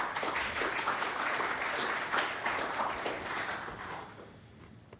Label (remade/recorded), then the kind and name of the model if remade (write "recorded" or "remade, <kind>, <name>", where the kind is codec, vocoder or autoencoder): recorded